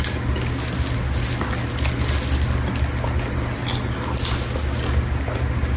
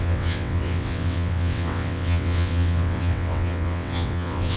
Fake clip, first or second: second